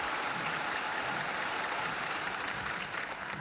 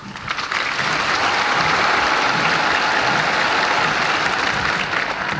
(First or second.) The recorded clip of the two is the second